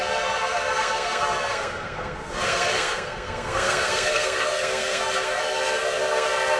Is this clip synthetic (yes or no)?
yes